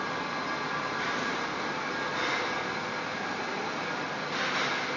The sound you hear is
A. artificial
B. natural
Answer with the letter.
B